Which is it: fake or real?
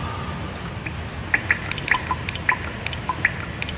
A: real